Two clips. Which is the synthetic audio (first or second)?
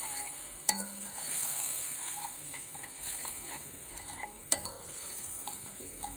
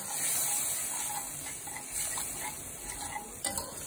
first